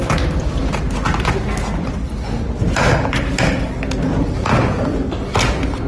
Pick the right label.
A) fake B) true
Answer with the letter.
B